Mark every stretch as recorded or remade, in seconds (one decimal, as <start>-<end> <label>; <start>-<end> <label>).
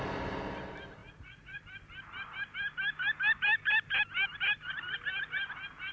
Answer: 0.0-1.0 recorded; 1.0-1.6 remade; 1.6-5.9 recorded